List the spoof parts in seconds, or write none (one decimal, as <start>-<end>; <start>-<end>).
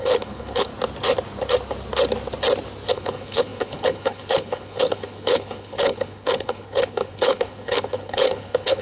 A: 0.0-0.7; 2.9-8.8